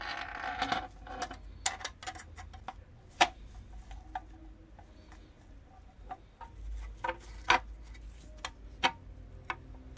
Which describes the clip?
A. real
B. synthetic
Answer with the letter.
A